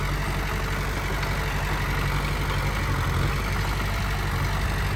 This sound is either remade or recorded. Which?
recorded